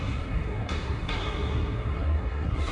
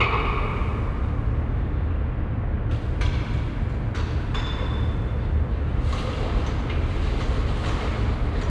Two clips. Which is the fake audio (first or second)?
first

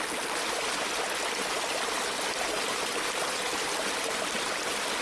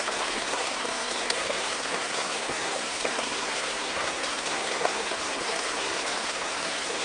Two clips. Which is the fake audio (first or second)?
second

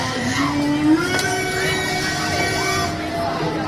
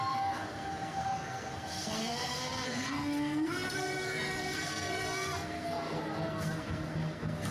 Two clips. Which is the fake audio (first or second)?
second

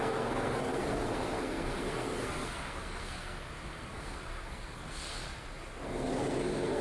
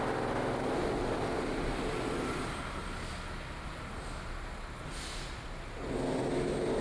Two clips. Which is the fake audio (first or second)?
first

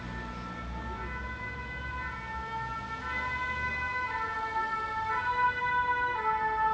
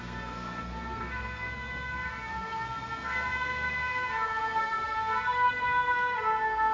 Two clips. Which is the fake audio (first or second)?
second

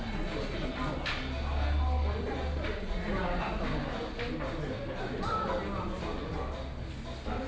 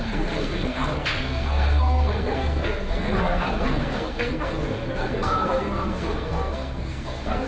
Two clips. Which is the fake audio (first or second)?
second